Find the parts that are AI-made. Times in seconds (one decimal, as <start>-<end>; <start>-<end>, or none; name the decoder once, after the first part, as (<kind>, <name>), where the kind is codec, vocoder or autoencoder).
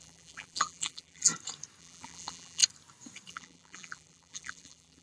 0.0-1.3 (vocoder, BigVGAN v2); 1.8-2.6; 3.3-5.0